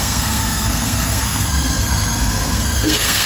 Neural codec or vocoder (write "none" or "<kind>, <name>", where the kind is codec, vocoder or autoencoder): codec, SNAC